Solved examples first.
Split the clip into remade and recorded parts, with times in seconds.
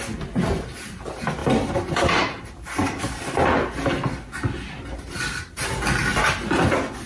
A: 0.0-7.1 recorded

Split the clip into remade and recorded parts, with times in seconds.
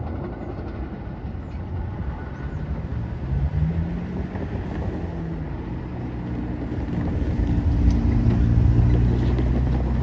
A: 0.0-10.0 recorded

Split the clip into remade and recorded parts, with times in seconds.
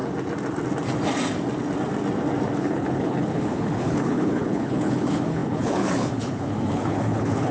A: 0.0-2.6 recorded; 2.6-7.5 remade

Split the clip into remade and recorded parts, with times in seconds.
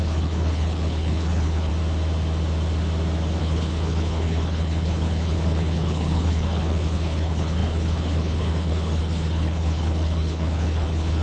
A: 0.0-1.7 remade; 1.7-3.4 recorded; 3.4-11.2 remade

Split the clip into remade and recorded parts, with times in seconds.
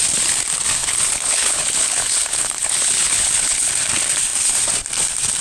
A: 0.0-0.8 recorded; 0.8-3.7 remade; 3.7-5.4 recorded